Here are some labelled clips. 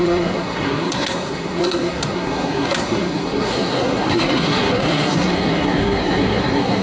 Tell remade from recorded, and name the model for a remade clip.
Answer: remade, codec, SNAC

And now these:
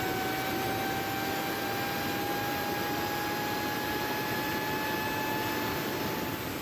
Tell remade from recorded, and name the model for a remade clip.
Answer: recorded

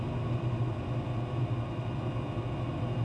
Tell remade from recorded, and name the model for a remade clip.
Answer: recorded